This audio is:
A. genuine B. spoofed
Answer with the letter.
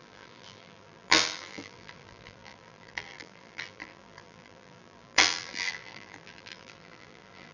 B